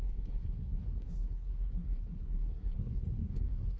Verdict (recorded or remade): remade